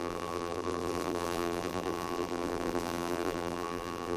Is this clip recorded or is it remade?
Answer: remade